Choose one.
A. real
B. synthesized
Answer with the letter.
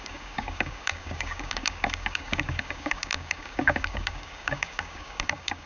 B